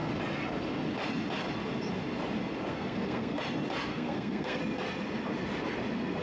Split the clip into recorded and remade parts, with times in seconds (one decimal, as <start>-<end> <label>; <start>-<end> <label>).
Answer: 0.0-2.7 recorded; 2.7-3.4 remade; 3.4-3.9 recorded; 3.9-4.6 remade; 4.6-6.2 recorded